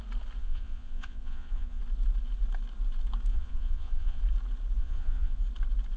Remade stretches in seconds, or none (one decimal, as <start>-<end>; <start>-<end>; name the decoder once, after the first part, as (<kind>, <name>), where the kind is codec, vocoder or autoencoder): 0.4-1.8 (vocoder, Vocos); 3.3-4.2; 4.8-5.4